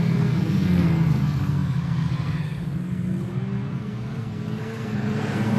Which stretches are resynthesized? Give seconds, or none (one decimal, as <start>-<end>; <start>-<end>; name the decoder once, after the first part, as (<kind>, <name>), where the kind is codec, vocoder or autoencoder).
0.0-5.6 (codec, SNAC)